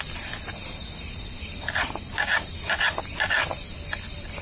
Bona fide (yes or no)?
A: yes